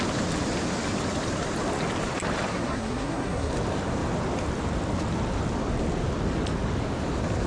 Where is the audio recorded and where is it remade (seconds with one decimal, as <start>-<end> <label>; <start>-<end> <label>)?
0.0-2.5 recorded; 2.5-3.5 remade; 3.5-7.5 recorded